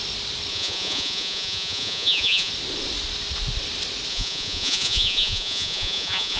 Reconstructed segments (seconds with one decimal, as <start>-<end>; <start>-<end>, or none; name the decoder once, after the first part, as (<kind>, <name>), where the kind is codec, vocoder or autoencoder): 0.5-2.5 (vocoder, Vocos); 4.1-6.4